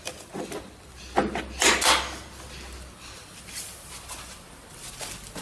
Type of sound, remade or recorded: recorded